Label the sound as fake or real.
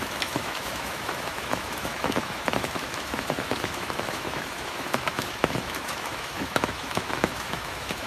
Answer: fake